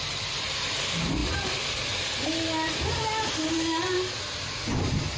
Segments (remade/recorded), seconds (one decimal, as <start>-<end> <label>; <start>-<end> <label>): 0.0-5.2 recorded